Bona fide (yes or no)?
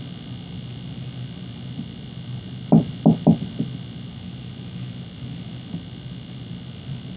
yes